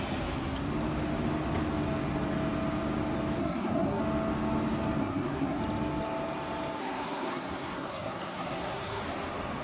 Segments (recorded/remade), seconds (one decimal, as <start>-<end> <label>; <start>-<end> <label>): 0.0-3.4 recorded; 3.4-4.0 remade; 4.0-5.0 recorded; 5.0-5.6 remade; 5.6-6.8 recorded; 6.8-9.0 remade; 9.0-9.6 recorded